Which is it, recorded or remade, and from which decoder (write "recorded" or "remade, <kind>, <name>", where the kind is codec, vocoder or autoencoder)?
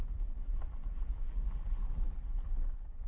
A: remade, vocoder, BigVGAN v2